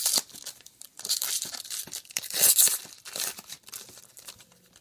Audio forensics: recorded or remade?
recorded